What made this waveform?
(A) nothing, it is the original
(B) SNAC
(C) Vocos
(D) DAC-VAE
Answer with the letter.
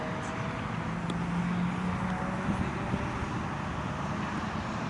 A